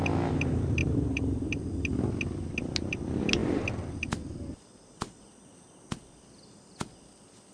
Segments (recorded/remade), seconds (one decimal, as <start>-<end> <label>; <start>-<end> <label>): 0.0-0.8 recorded; 0.8-1.7 remade; 1.7-7.5 recorded